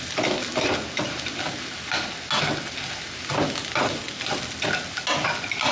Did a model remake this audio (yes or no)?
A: no